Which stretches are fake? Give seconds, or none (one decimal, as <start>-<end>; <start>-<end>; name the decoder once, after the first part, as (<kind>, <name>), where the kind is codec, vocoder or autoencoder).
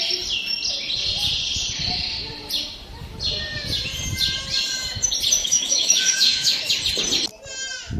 5.4-6.7 (autoencoder, DAC-VAE)